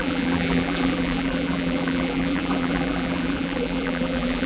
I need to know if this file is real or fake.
fake